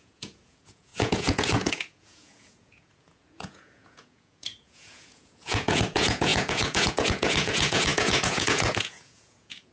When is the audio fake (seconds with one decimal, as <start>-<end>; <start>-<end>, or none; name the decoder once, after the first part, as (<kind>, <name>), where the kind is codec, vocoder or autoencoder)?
0.0-9.7 (vocoder, Vocos)